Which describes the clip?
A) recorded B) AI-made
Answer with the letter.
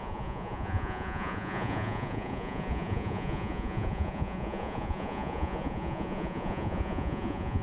B